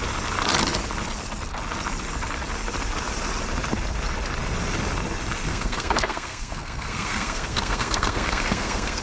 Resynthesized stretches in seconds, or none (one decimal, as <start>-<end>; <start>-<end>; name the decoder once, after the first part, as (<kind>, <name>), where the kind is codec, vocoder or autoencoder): 5.5-9.0 (codec, SNAC)

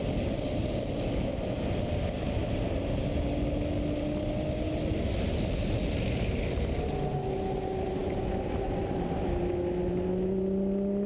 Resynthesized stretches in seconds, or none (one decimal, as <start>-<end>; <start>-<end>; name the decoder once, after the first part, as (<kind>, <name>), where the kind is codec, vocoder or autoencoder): none